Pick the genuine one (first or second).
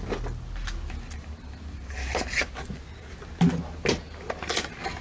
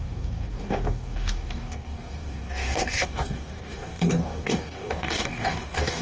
first